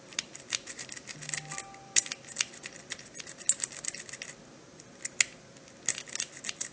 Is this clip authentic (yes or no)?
yes